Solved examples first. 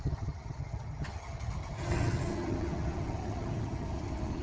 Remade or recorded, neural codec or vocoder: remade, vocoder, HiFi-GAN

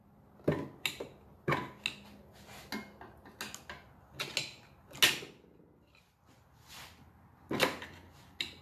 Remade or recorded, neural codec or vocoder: recorded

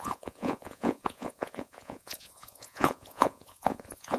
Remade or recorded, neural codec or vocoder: remade, vocoder, Vocos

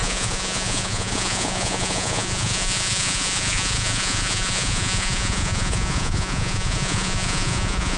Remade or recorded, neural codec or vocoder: remade, vocoder, Vocos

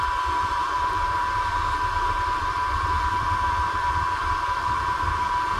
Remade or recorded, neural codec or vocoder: remade, vocoder, BigVGAN v2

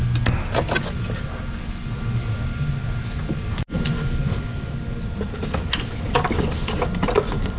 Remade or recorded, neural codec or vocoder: recorded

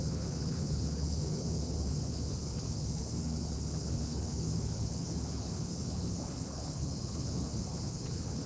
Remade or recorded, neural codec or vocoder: remade, codec, HILCodec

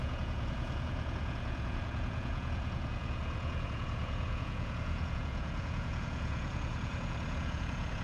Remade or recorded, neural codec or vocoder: remade, vocoder, Vocos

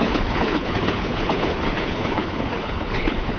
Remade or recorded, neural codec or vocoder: remade, codec, HILCodec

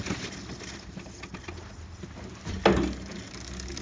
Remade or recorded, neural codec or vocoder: recorded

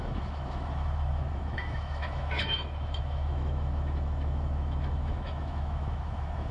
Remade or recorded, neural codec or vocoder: remade, autoencoder, DAC-VAE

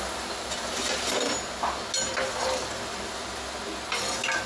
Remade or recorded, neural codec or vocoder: recorded